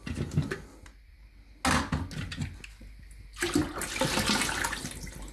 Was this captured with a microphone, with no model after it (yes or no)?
yes